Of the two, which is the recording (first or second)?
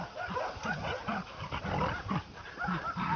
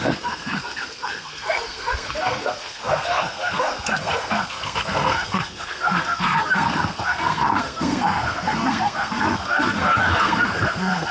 first